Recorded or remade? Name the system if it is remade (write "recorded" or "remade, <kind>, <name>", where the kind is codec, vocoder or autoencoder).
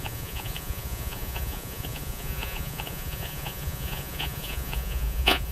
remade, vocoder, Vocos